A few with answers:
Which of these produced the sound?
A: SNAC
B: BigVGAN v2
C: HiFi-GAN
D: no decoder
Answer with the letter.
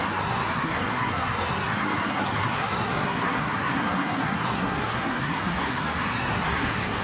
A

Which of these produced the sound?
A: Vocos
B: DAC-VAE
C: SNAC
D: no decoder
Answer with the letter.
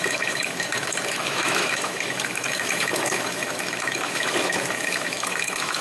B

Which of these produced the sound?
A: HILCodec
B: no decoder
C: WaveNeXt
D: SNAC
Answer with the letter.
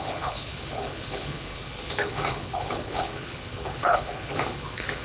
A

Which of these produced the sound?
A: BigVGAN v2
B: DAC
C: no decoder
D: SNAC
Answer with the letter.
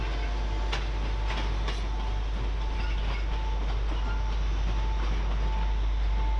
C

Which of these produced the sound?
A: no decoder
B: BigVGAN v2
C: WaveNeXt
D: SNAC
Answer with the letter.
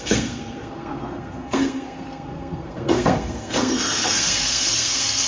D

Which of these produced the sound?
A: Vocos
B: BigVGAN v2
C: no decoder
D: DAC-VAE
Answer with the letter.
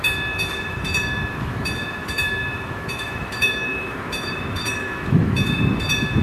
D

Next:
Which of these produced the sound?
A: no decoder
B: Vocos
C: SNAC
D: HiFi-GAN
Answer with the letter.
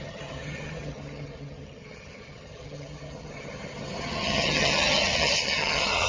D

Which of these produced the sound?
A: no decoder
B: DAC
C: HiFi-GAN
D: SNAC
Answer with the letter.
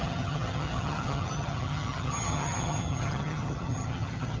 C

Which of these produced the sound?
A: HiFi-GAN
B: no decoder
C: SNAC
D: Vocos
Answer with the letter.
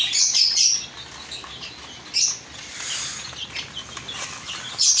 B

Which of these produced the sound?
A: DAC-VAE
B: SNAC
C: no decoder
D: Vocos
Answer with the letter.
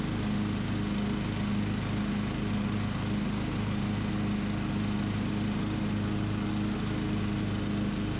C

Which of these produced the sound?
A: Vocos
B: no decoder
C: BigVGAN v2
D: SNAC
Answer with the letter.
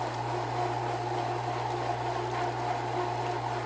B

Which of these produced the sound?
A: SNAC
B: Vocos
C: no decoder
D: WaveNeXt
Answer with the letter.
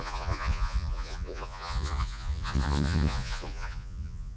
B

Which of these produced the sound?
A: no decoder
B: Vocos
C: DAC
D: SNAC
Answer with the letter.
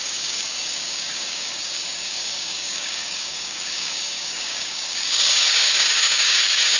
C